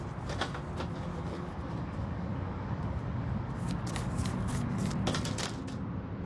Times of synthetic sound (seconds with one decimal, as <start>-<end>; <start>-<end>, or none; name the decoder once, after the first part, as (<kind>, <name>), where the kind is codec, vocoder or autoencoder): 1.1-4.9 (codec, DAC)